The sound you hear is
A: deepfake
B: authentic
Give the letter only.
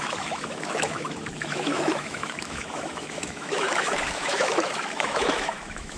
A